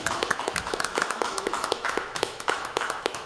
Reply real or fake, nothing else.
fake